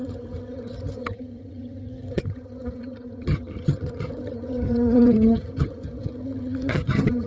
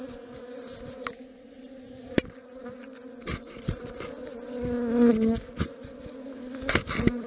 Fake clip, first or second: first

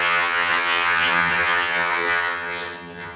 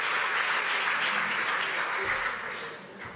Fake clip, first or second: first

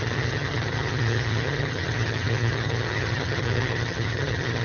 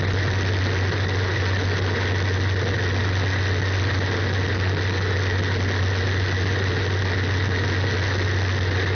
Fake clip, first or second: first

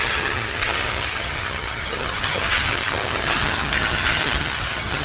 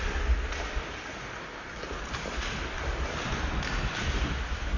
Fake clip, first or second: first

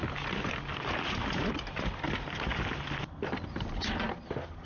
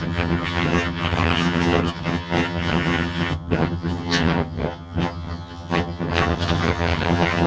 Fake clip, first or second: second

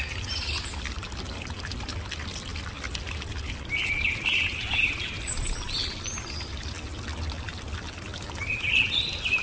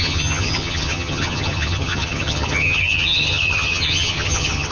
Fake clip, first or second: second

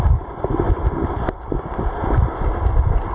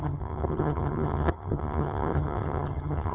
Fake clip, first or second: second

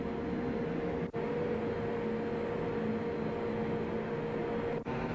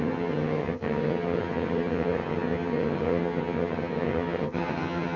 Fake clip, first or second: second